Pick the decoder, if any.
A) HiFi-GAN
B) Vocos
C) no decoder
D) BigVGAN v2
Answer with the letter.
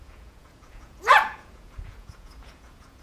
B